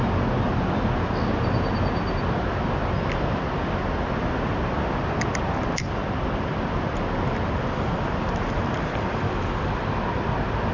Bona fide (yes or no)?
yes